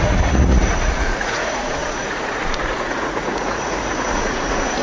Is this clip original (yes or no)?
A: no